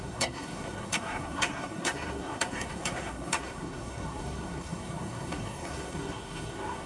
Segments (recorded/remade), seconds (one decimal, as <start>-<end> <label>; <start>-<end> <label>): 0.0-6.9 remade